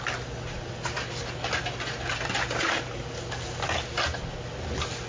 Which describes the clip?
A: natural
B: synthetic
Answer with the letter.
A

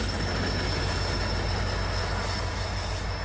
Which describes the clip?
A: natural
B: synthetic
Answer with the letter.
A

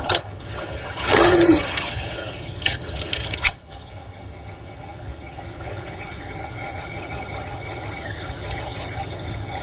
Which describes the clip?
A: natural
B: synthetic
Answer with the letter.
B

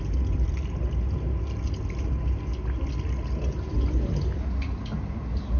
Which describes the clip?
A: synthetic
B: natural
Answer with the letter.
B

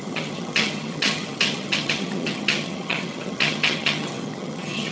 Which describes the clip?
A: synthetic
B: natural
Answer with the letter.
A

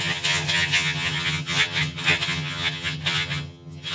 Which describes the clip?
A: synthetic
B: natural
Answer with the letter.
A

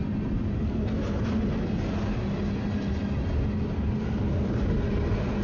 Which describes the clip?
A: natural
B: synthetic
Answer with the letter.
A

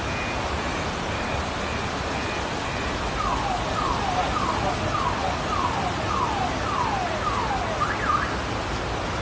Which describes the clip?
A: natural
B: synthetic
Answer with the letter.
A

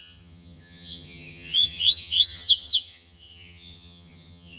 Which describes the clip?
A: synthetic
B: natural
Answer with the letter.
A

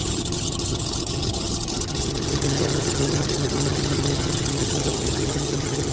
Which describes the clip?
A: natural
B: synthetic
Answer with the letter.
B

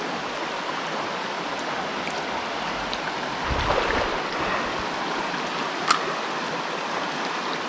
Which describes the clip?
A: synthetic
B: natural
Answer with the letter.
B